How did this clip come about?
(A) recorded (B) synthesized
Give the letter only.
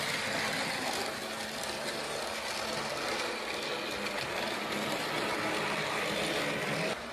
A